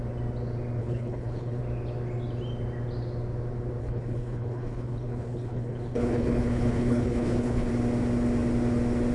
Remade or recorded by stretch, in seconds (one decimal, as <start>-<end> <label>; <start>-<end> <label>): 0.0-0.8 recorded; 0.8-1.6 remade; 1.6-3.8 recorded; 3.8-7.7 remade; 7.7-9.1 recorded